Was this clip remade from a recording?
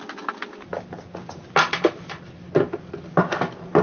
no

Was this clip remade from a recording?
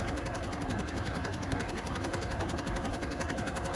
yes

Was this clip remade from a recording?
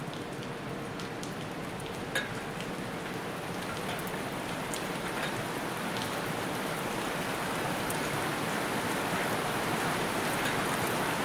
yes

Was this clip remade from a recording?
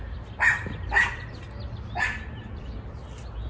no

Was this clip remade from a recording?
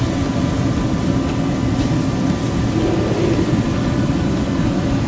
no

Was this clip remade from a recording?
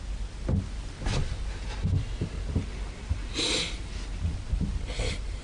no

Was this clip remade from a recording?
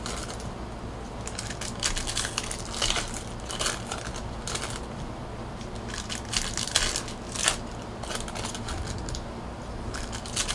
no